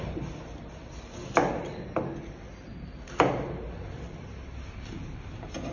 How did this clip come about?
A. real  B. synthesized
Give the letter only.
A